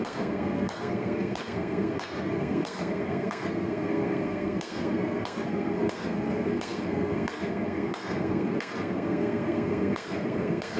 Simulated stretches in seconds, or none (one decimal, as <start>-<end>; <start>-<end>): 0.0-10.8